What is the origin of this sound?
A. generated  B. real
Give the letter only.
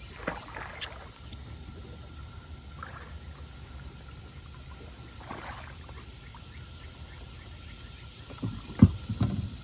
B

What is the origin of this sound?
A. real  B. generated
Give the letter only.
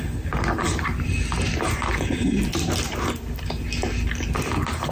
A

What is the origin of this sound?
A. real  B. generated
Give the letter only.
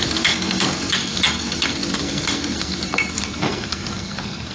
B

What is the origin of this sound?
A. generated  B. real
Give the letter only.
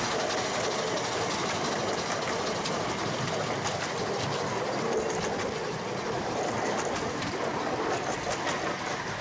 B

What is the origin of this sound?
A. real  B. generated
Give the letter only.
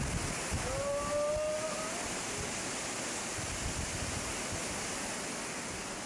A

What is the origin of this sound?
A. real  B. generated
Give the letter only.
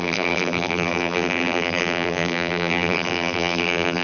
B